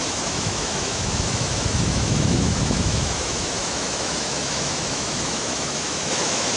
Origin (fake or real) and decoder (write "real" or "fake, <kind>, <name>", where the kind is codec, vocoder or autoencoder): fake, autoencoder, DAC-VAE